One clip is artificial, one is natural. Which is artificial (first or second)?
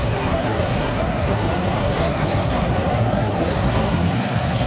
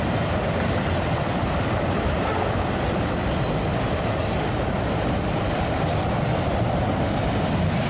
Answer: first